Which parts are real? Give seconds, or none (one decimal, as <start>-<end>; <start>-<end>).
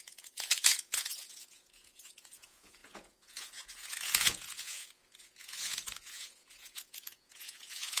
none